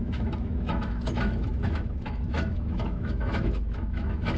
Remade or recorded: remade